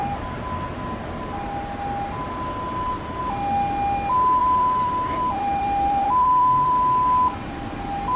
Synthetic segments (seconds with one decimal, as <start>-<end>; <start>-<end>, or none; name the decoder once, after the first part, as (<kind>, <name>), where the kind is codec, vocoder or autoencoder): 4.4-6.8 (vocoder, BigVGAN v2)